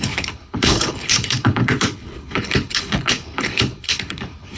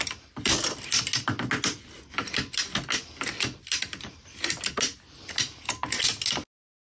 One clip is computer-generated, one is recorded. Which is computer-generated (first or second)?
first